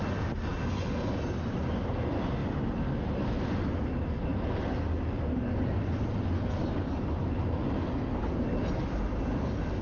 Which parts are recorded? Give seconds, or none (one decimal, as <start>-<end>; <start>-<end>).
0.0-9.8